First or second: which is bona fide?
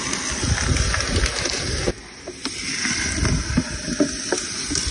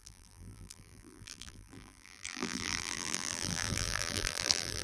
first